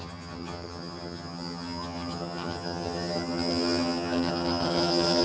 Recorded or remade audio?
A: remade